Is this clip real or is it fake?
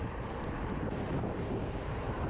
fake